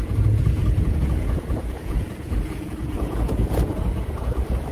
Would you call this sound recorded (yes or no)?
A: no